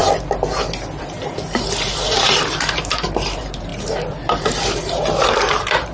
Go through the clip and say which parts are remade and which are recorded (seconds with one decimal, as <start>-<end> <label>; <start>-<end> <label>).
0.0-1.0 recorded; 1.0-5.9 remade